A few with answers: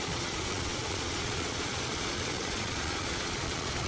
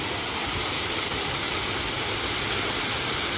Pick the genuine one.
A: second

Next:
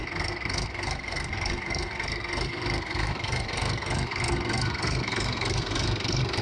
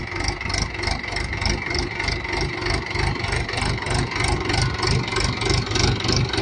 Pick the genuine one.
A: second